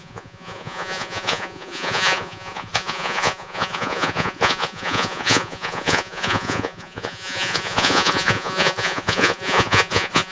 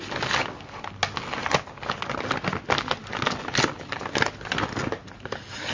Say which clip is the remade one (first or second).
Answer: first